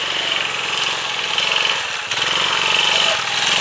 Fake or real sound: fake